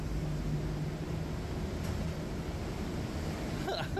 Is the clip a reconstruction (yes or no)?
no